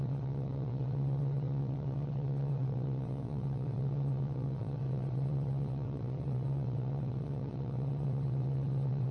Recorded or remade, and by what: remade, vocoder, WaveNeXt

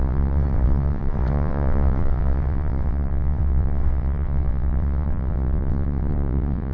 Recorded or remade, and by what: remade, vocoder, WaveNeXt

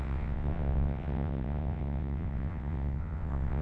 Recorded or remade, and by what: remade, vocoder, WaveNeXt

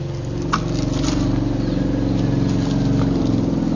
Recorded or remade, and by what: recorded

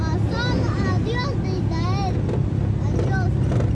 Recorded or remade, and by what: recorded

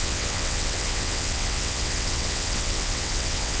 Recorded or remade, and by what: remade, vocoder, WaveNeXt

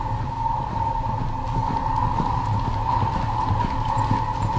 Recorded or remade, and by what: recorded